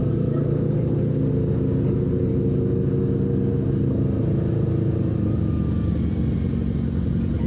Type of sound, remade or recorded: recorded